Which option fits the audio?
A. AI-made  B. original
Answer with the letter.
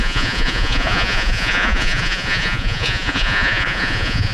A